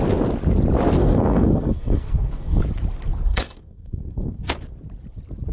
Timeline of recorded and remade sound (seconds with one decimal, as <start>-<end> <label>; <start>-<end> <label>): 0.0-1.0 recorded; 1.0-2.6 remade; 2.6-3.3 recorded; 3.3-4.5 remade; 4.5-5.5 recorded

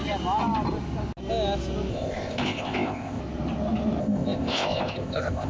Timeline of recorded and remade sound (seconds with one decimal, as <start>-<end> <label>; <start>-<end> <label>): 0.0-1.9 recorded; 1.9-3.2 remade; 3.2-4.0 recorded; 4.0-5.5 remade

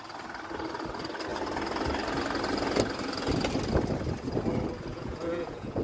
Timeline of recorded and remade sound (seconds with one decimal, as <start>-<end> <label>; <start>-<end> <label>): 0.0-4.9 recorded; 4.9-5.8 remade